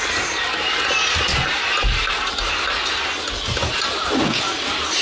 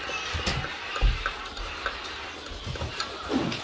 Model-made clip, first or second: second